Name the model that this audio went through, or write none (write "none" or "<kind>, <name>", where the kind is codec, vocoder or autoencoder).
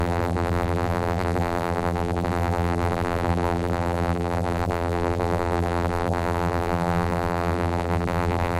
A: vocoder, BigVGAN v2